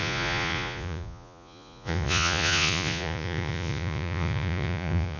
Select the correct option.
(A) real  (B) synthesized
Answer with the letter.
B